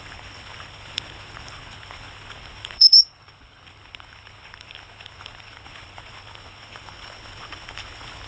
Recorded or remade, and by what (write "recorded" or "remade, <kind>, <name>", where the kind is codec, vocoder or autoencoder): remade, codec, HILCodec